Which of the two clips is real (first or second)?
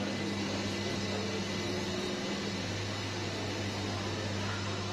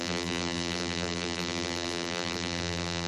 first